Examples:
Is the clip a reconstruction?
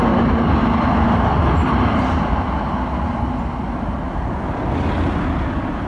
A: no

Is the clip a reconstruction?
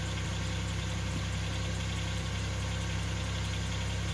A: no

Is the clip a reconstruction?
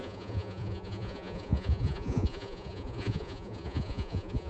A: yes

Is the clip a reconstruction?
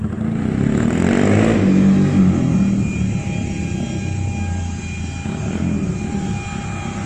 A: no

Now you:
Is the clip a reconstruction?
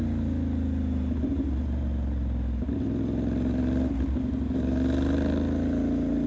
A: no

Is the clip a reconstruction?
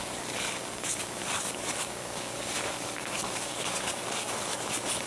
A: yes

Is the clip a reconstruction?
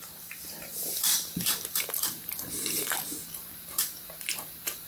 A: yes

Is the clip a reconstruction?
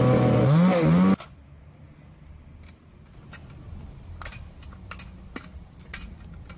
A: no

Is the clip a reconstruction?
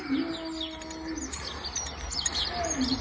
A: no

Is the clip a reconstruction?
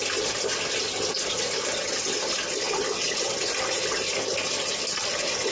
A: no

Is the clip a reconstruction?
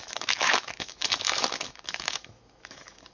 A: yes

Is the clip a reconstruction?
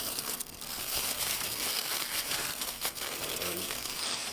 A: yes